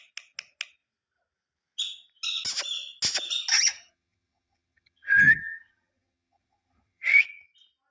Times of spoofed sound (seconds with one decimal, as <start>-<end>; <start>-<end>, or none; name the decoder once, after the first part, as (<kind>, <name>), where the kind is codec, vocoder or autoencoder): 3.5-7.2 (vocoder, HiFi-GAN)